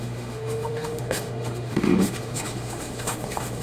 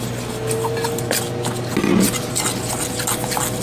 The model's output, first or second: first